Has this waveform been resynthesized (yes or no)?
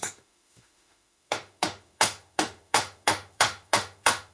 yes